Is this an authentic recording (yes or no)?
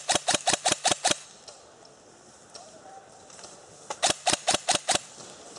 yes